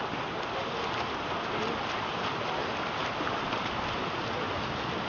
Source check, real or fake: real